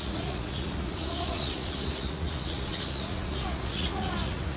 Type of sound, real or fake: fake